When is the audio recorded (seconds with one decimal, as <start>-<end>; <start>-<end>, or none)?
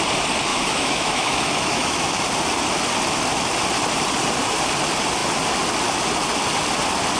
0.0-0.5; 2.2-7.2